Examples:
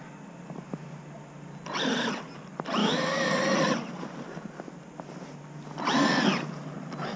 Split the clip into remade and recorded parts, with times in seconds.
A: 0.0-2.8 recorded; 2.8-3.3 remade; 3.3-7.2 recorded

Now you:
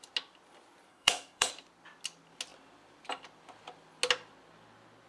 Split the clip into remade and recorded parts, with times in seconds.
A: 0.0-0.9 recorded; 0.9-1.5 remade; 1.5-5.1 recorded